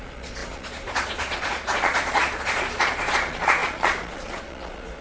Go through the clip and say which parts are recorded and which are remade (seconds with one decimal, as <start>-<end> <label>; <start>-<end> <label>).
0.0-5.0 remade